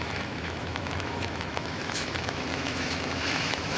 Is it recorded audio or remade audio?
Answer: remade